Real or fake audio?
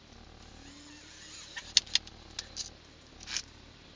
real